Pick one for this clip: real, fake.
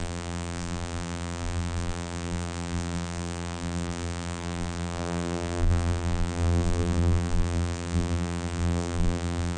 fake